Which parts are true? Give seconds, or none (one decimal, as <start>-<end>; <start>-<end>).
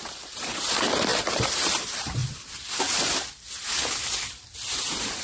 2.2-4.7